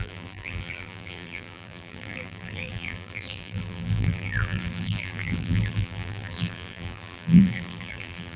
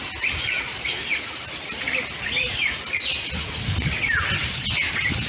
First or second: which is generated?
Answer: first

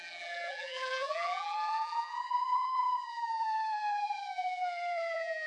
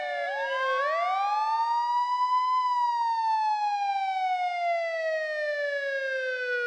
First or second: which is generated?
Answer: first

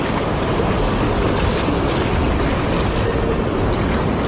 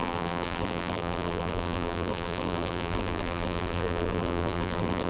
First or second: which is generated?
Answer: second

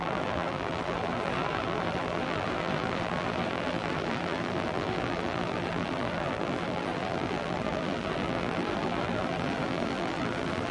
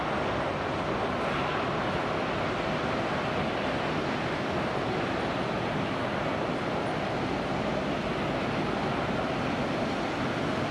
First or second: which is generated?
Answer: first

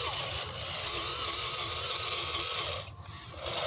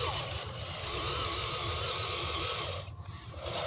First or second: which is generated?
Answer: second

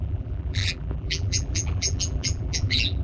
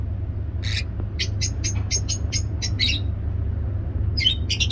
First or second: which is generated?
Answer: first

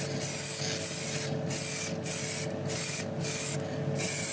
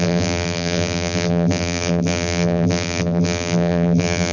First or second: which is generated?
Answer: second